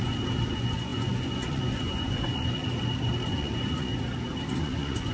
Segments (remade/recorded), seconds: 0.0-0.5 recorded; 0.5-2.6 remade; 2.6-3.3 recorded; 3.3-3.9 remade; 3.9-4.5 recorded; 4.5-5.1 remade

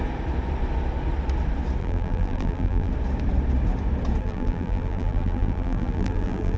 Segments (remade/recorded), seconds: 0.0-1.8 recorded; 1.8-2.9 remade; 2.9-4.2 recorded; 4.2-6.6 remade

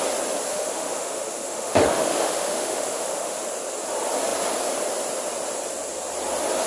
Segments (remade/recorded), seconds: 0.0-0.5 recorded; 0.5-3.4 remade; 3.4-6.7 recorded

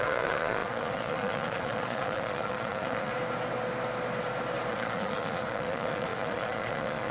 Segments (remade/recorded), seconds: 0.0-3.1 remade; 3.1-4.7 recorded; 4.7-7.1 remade

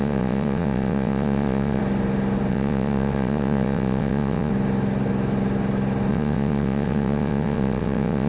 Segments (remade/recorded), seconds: 0.0-1.8 remade; 1.8-2.5 recorded; 2.5-4.5 remade; 4.5-6.1 recorded; 6.1-8.3 remade

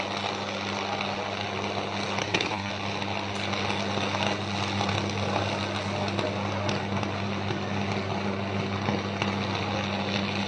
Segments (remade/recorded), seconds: 0.0-2.2 recorded; 2.2-2.7 remade; 2.7-10.5 recorded

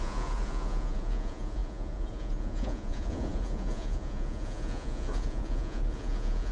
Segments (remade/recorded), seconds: 0.0-6.5 remade

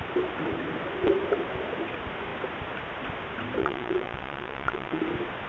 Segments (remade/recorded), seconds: 0.0-3.6 recorded; 3.6-5.0 remade; 5.0-5.5 recorded